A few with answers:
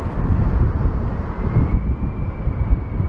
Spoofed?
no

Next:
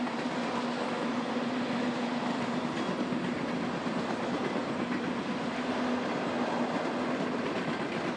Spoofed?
no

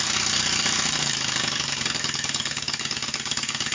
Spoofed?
yes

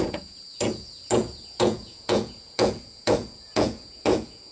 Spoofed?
yes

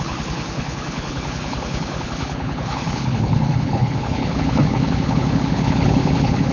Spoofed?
yes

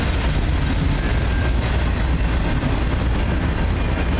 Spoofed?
no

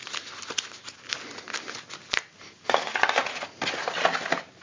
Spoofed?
no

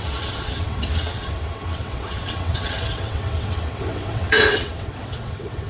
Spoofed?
yes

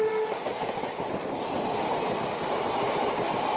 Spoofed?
no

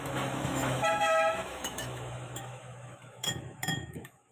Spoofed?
yes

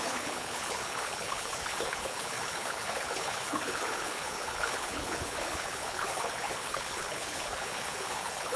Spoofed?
yes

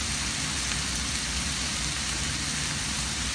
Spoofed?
no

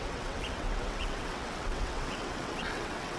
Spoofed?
yes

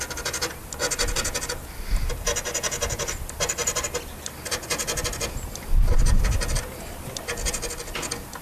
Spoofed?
no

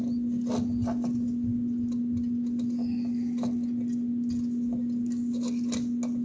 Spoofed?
no